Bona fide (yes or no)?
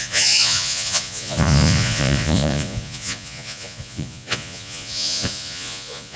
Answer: no